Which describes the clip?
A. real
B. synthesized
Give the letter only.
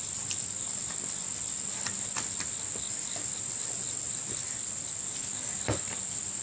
A